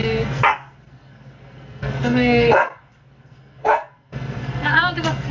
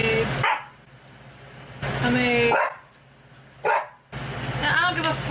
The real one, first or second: second